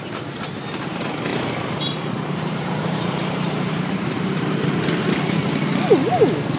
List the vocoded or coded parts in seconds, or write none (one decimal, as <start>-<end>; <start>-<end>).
1.3-5.3